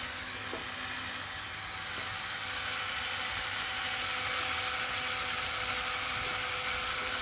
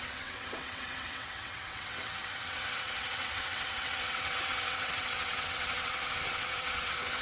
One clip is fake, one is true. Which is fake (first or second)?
second